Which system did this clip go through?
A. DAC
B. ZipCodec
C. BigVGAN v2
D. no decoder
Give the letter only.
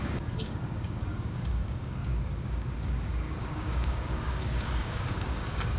A